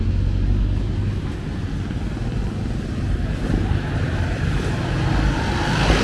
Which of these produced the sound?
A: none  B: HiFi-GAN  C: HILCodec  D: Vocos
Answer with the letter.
A